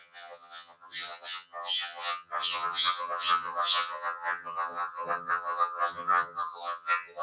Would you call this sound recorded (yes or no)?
no